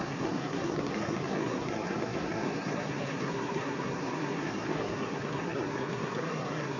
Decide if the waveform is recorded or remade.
remade